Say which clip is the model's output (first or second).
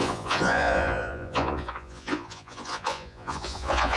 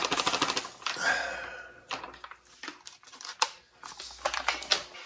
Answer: first